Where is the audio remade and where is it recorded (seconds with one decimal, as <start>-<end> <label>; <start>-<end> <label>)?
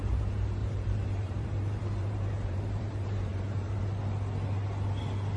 0.0-0.6 recorded; 0.6-3.8 remade; 3.8-5.4 recorded